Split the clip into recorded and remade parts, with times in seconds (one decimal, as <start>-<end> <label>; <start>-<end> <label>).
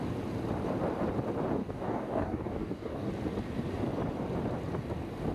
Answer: 0.0-1.6 recorded; 1.6-3.1 remade; 3.1-5.3 recorded